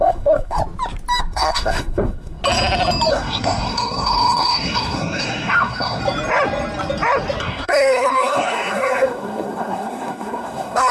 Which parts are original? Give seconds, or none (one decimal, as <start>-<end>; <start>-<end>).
0.6-1.2; 2.4-3.1; 6.0-7.4